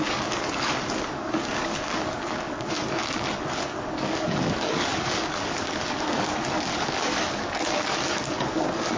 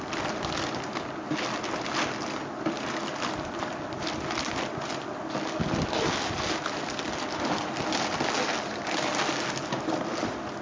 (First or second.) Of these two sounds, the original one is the second